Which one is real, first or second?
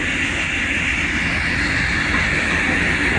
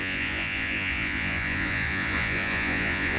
first